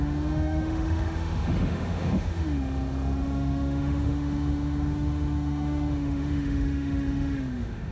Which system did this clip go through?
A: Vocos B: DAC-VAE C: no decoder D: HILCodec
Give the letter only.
B